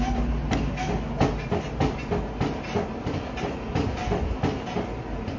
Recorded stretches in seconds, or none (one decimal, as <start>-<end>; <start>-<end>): 0.0-5.4